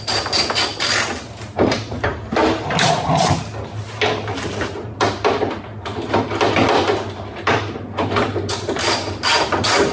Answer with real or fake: real